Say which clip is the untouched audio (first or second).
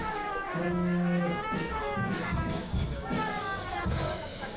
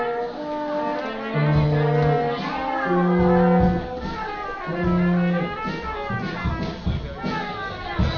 second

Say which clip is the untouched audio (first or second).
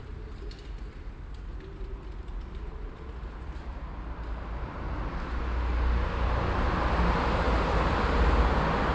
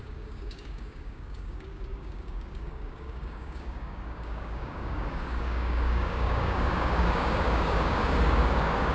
first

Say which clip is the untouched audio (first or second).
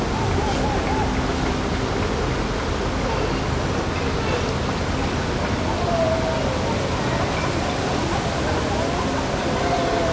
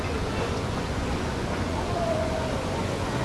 first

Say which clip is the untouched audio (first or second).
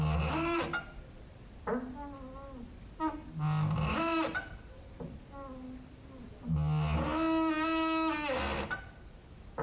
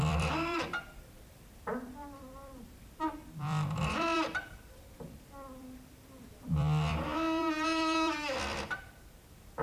first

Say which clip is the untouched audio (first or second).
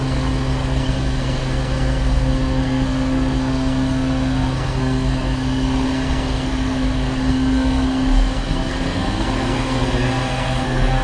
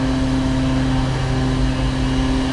second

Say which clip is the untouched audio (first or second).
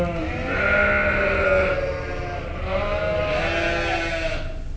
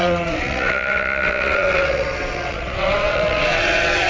first